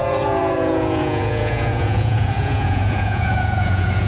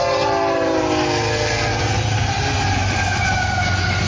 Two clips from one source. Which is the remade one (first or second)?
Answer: first